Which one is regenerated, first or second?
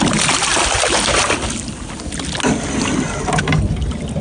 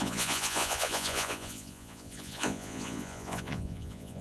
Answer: second